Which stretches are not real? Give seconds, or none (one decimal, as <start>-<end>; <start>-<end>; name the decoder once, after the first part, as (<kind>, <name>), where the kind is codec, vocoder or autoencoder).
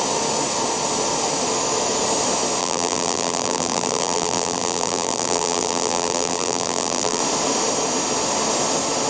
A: 2.6-7.2 (vocoder, BigVGAN v2)